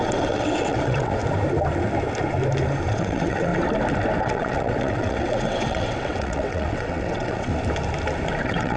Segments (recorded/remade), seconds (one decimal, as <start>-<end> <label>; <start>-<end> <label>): 0.0-1.2 remade; 1.2-2.9 recorded; 2.9-3.5 remade; 3.5-4.2 recorded; 4.2-7.5 remade; 7.5-8.4 recorded; 8.4-8.8 remade

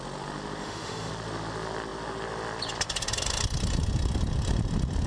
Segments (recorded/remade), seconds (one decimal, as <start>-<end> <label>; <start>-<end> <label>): 0.0-0.6 recorded; 0.6-1.1 remade; 1.1-5.1 recorded